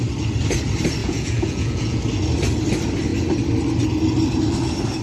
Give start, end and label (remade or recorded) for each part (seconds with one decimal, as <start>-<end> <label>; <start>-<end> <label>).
0.0-1.0 recorded; 1.0-2.0 remade; 2.0-5.0 recorded